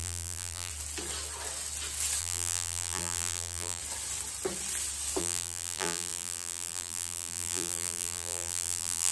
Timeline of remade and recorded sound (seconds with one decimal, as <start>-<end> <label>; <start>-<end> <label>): 0.0-0.7 remade; 0.7-2.2 recorded; 2.2-3.8 remade; 3.8-5.2 recorded; 5.2-9.1 remade